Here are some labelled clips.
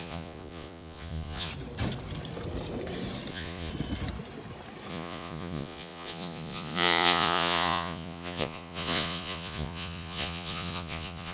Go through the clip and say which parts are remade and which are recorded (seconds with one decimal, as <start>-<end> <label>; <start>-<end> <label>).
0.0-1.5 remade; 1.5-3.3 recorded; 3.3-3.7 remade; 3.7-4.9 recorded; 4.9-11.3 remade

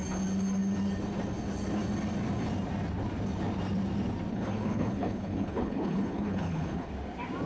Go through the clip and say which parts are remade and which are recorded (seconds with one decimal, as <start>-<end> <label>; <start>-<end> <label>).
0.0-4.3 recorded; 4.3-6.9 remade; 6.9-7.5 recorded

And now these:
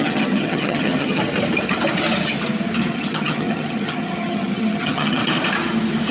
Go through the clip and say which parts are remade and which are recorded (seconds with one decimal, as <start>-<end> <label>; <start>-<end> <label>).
0.0-1.2 remade; 1.2-2.9 recorded; 2.9-5.2 remade; 5.2-6.1 recorded

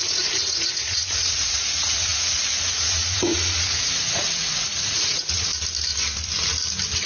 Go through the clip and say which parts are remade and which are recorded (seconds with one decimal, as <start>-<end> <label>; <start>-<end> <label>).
0.0-5.5 remade; 5.5-7.1 recorded

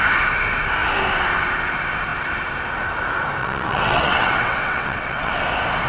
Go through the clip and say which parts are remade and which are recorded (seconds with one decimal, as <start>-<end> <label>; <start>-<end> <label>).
0.0-3.4 recorded; 3.4-5.3 remade; 5.3-5.9 recorded

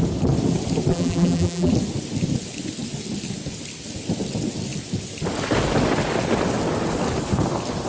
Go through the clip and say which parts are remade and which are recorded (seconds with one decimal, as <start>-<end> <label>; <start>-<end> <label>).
0.0-0.9 recorded; 0.9-1.7 remade; 1.7-7.9 recorded